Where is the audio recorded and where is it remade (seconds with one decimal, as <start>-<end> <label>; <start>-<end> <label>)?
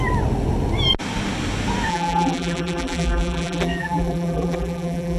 0.0-1.9 recorded; 1.9-5.2 remade